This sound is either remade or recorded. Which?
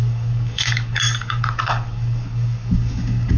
remade